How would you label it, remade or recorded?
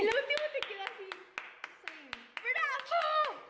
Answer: recorded